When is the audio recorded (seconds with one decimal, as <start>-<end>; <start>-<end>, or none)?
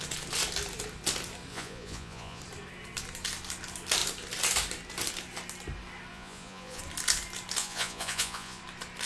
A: 0.0-1.5; 2.4-6.1; 6.8-7.6; 8.6-9.1